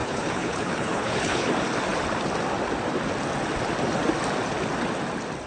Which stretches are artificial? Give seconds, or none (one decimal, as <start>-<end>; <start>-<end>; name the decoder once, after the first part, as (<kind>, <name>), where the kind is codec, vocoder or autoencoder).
0.0-1.5 (codec, HILCodec)